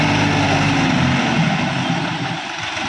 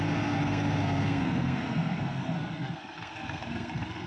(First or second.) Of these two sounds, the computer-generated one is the second